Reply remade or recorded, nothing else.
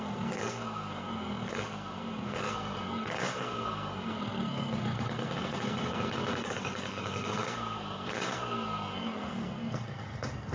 remade